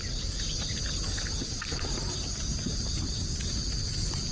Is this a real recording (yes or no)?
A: no